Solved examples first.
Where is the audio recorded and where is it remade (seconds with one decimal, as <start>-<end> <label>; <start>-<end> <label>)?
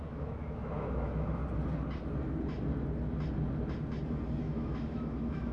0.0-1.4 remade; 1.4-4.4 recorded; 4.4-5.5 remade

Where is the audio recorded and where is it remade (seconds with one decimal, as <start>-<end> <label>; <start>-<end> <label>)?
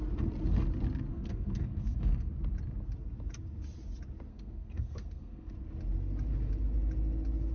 0.0-1.1 recorded; 1.1-2.3 remade; 2.3-4.3 recorded; 4.3-5.5 remade; 5.5-7.5 recorded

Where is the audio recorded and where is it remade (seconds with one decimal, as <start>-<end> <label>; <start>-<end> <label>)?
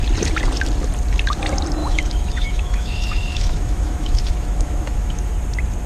0.0-1.8 recorded; 1.8-5.3 remade; 5.3-5.9 recorded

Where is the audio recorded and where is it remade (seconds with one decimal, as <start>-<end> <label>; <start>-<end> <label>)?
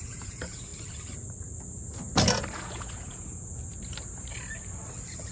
0.0-0.7 remade; 0.7-2.5 recorded; 2.5-3.7 remade; 3.7-5.3 recorded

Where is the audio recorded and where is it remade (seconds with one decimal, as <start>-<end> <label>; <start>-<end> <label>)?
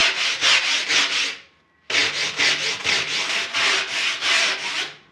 0.0-5.1 recorded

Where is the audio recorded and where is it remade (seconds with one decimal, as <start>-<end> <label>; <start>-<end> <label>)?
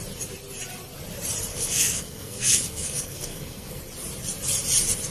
0.0-1.5 recorded; 1.5-3.8 remade; 3.8-5.1 recorded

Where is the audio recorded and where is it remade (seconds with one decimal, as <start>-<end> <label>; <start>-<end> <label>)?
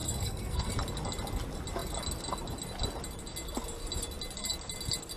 0.0-0.7 remade; 0.7-5.2 recorded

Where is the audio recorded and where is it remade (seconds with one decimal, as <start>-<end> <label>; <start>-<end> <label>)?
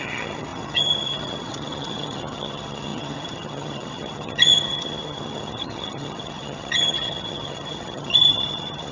0.0-8.9 remade